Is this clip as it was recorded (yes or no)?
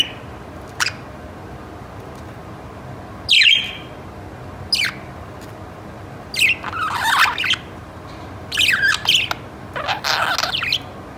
yes